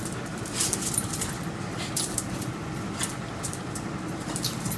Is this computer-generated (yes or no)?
yes